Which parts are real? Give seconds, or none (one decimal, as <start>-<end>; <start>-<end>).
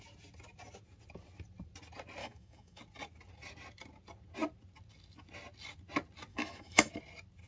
0.0-2.2; 2.8-6.3; 6.9-7.5